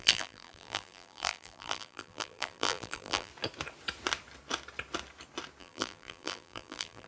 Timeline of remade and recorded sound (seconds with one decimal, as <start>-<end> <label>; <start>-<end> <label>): 0.0-3.3 remade; 3.3-5.6 recorded; 5.6-7.1 remade